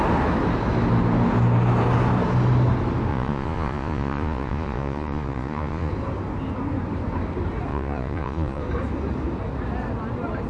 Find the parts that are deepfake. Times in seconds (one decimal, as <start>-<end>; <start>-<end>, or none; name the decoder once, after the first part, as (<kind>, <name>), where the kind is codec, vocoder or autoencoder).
3.1-5.9 (vocoder, Vocos); 7.7-8.6